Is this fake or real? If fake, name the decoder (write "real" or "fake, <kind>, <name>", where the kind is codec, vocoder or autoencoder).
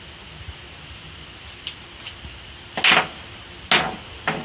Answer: real